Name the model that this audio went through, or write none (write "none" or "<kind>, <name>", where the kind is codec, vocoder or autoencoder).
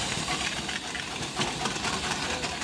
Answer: none